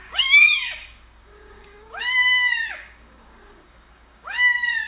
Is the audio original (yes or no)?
no